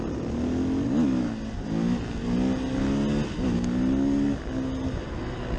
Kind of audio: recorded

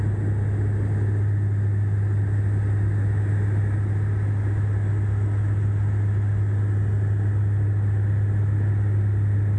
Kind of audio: recorded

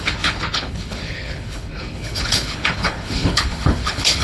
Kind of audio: remade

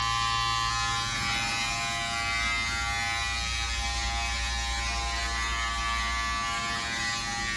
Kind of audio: recorded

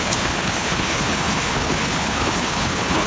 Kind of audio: remade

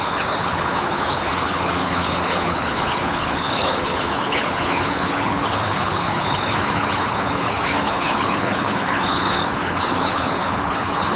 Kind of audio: remade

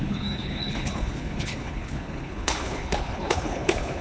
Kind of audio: remade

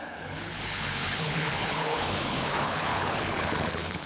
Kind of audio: remade